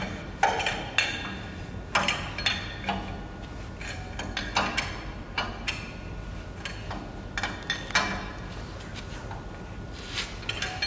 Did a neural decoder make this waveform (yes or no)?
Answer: no